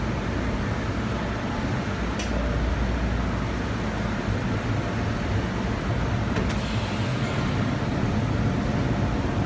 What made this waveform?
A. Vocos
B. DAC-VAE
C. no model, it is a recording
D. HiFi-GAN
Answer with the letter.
C